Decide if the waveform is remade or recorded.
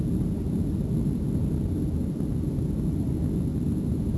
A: recorded